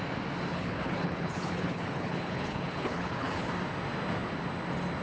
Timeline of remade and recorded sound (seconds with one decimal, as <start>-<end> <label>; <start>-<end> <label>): 0.0-0.5 recorded; 0.5-3.5 remade; 3.5-5.0 recorded

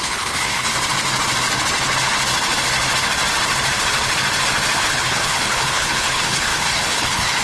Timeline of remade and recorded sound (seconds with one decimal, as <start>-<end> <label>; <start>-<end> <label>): 0.0-0.7 remade; 0.7-4.9 recorded; 4.9-7.4 remade